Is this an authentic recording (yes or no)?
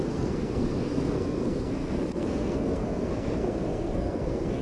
no